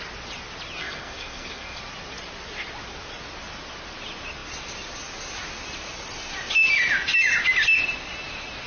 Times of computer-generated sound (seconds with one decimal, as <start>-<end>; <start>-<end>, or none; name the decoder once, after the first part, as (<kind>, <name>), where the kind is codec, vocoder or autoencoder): 0.8-1.8 (codec, SNAC)